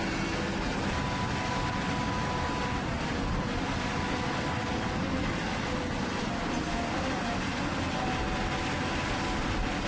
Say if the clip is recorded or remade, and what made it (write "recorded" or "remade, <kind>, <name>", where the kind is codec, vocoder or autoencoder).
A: recorded